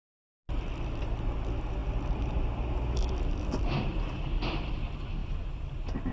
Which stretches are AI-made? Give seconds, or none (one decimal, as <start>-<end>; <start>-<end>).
none